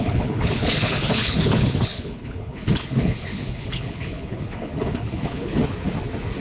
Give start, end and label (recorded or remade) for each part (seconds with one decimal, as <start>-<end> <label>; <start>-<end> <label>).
0.0-5.6 remade; 5.6-6.4 recorded